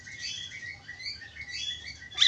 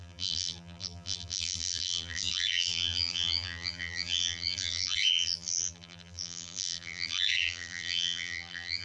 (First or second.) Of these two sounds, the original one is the first